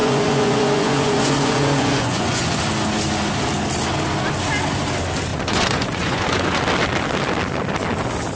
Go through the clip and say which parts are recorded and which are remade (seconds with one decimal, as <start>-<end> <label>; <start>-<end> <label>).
0.0-2.6 remade; 2.6-5.3 recorded; 5.3-6.6 remade; 6.6-8.4 recorded

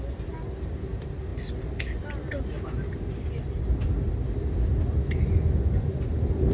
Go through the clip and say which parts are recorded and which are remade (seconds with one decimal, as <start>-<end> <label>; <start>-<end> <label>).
0.0-6.5 recorded

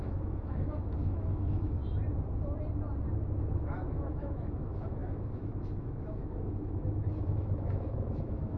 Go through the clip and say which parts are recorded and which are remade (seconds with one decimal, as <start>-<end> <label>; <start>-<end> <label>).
0.0-1.8 remade; 1.8-3.5 recorded; 3.5-8.6 remade

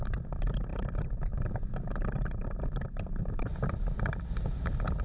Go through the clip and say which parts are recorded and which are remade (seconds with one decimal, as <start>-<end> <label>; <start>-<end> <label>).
0.0-0.7 recorded; 0.7-3.7 remade; 3.7-5.0 recorded

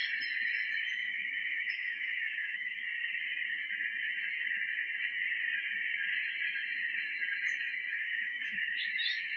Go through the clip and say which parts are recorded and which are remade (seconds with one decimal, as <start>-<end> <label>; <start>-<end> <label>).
0.0-0.7 recorded; 0.7-2.8 remade; 2.8-7.9 recorded; 7.9-9.4 remade

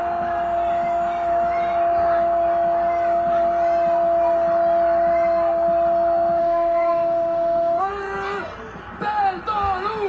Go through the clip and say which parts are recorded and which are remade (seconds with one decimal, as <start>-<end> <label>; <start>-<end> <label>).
0.0-6.4 recorded; 6.4-7.9 remade; 7.9-10.1 recorded